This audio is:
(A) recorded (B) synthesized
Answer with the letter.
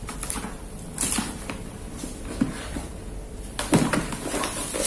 A